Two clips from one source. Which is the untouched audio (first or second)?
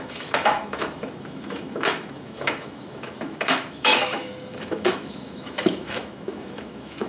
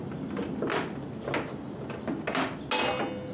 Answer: second